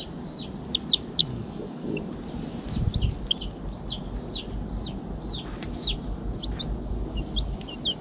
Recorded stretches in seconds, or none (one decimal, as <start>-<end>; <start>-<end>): 0.0-1.3; 2.0-8.0